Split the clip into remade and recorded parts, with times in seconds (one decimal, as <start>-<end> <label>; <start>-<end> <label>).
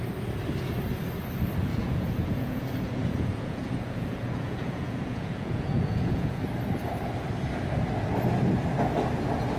0.0-1.7 recorded; 1.7-6.5 remade; 6.5-9.6 recorded